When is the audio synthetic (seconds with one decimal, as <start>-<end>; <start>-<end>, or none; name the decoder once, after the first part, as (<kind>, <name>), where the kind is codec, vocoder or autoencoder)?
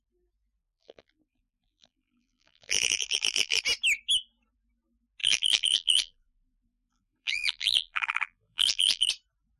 0.6-3.6 (vocoder, BigVGAN v2); 5.2-9.1